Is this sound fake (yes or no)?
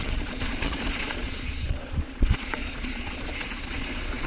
yes